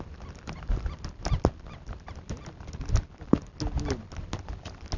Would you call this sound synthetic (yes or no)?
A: no